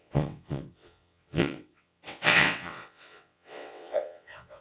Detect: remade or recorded remade